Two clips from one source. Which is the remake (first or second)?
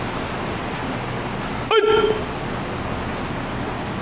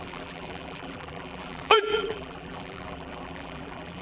second